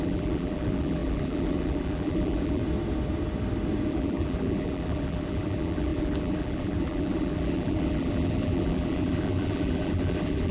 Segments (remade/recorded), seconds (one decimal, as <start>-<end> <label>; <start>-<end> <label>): 0.0-2.6 remade; 2.6-3.9 recorded; 3.9-10.5 remade